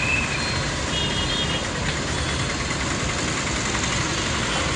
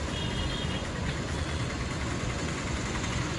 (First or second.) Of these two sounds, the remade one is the second